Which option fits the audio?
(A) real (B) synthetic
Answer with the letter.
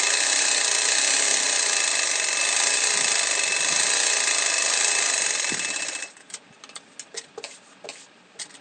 A